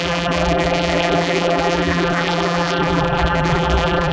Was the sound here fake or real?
fake